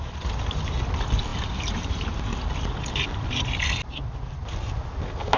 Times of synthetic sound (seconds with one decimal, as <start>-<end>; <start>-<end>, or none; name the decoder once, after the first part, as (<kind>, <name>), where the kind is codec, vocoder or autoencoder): 1.3-1.9 (vocoder, BigVGAN v2)